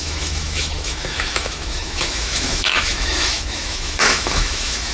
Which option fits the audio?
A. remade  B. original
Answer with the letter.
A